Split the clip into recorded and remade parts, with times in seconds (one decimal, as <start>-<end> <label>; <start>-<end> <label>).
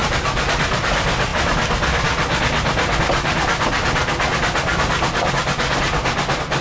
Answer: 0.0-6.6 recorded